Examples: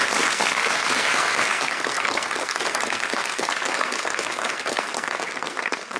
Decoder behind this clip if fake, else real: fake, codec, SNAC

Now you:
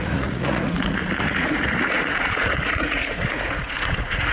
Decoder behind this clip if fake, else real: fake, vocoder, Vocos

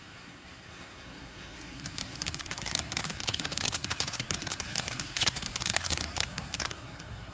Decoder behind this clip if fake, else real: fake, codec, SNAC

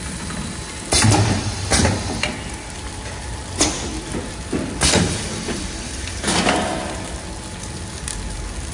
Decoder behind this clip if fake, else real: real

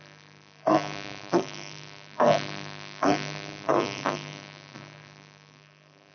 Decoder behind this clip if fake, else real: fake, codec, SNAC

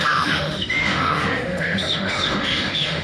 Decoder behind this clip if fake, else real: fake, autoencoder, DAC-VAE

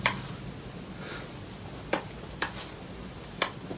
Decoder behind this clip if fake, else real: real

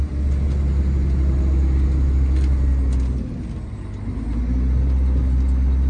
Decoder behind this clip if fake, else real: real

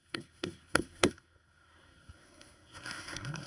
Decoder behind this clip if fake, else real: fake, codec, SNAC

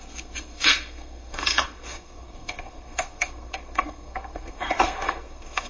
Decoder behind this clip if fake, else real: fake, codec, SNAC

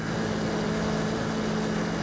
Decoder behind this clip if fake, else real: real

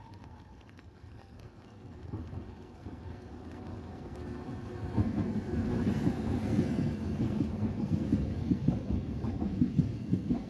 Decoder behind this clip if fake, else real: fake, codec, SNAC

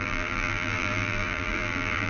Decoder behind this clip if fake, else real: fake, vocoder, BigVGAN v2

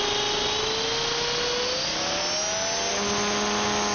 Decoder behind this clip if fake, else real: real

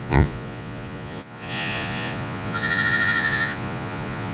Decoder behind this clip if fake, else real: fake, vocoder, Vocos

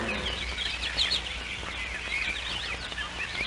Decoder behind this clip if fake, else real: real